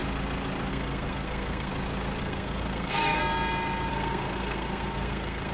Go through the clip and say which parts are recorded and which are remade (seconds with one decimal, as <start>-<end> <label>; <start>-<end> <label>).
0.0-0.7 recorded; 0.7-1.7 remade; 1.7-2.2 recorded; 2.2-3.2 remade; 3.2-3.9 recorded; 3.9-5.5 remade